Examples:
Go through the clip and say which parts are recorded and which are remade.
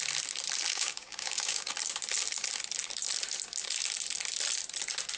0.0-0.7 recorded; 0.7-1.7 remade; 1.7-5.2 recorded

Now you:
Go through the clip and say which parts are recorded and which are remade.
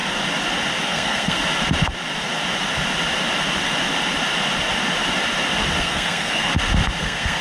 0.0-0.8 recorded; 0.8-1.4 remade; 1.4-5.8 recorded; 5.8-6.5 remade; 6.5-7.0 recorded; 7.0-7.4 remade